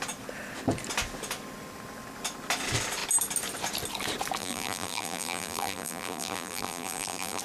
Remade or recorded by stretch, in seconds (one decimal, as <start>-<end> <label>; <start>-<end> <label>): 0.0-4.4 recorded; 4.4-7.4 remade